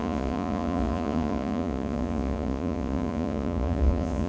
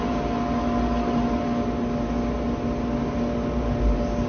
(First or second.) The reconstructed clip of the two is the first